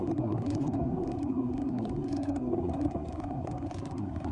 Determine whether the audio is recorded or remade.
remade